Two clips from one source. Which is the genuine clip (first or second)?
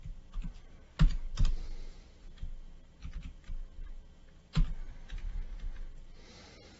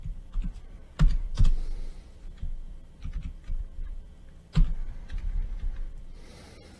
first